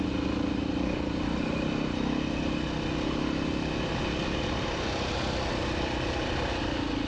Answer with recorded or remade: recorded